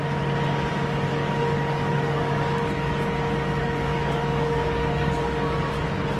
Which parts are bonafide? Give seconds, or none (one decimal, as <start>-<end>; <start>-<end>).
0.0-1.1; 2.9-3.6; 5.8-6.2